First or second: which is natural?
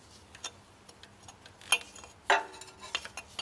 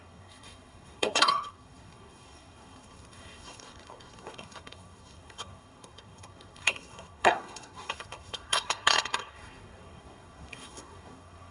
first